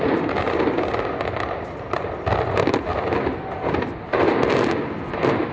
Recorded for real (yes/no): yes